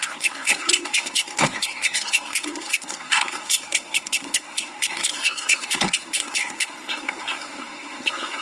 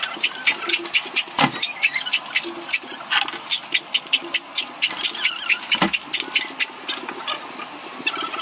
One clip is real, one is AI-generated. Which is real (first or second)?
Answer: second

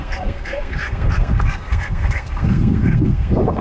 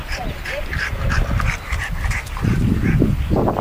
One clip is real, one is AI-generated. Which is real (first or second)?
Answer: second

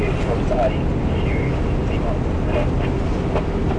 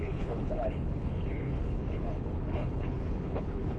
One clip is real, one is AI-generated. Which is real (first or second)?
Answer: first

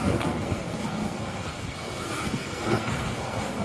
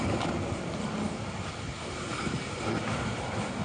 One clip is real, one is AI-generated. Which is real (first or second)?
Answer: second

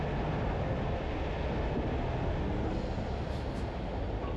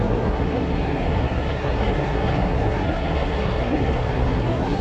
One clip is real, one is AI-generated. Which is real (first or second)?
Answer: first